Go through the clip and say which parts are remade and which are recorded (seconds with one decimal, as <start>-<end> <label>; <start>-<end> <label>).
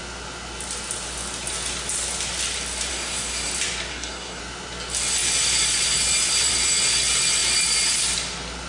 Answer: 0.0-2.9 recorded; 2.9-3.5 remade; 3.5-3.9 recorded; 3.9-4.4 remade; 4.4-8.7 recorded